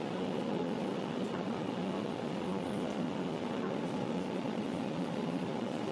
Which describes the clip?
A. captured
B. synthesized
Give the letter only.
B